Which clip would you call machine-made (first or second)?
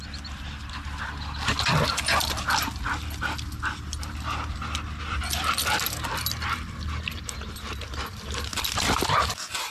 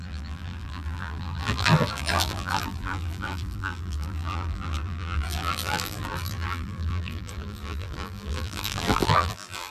second